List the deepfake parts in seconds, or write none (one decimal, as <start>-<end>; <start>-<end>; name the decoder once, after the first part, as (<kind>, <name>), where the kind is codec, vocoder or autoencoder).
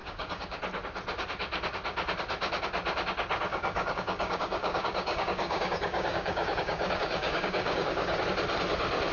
0.0-0.6 (codec, DAC); 3.5-8.2